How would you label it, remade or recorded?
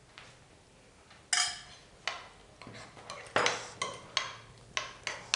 recorded